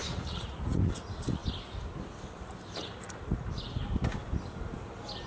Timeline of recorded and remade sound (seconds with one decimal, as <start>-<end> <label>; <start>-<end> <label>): 0.0-0.8 remade; 0.8-5.3 recorded

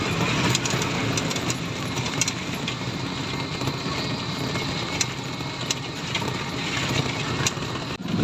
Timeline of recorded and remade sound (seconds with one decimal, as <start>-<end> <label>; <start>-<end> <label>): 0.0-1.3 recorded; 1.3-2.3 remade; 2.3-8.2 recorded